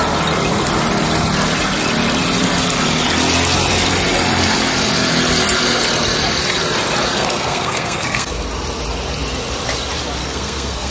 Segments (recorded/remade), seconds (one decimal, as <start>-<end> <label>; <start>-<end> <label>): 0.0-7.1 recorded; 7.1-8.3 remade; 8.3-10.2 recorded; 10.2-10.9 remade